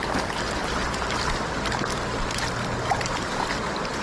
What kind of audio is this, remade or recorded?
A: recorded